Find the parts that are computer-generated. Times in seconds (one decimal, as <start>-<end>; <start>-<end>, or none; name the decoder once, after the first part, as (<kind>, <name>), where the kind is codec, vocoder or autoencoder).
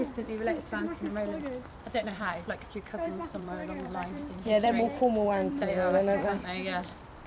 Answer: 2.0-5.7 (vocoder, BigVGAN v2)